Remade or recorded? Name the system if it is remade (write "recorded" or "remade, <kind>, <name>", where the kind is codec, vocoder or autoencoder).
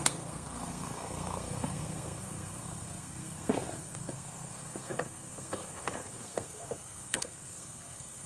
remade, codec, SNAC